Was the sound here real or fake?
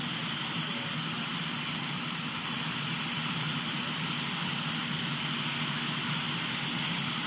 real